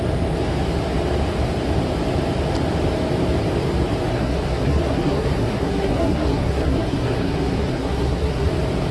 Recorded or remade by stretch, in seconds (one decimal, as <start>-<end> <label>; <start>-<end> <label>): 0.0-4.1 recorded; 4.1-8.5 remade; 8.5-8.9 recorded